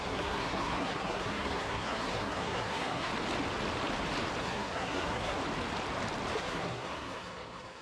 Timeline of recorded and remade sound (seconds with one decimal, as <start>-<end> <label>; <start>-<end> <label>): 0.0-3.1 remade; 3.1-4.4 recorded; 4.4-5.4 remade; 5.4-6.4 recorded; 6.4-7.8 remade